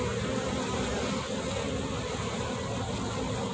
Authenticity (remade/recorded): recorded